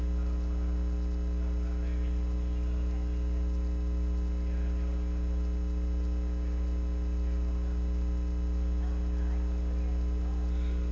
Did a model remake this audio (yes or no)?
no